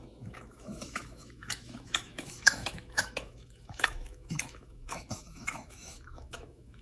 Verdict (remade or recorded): remade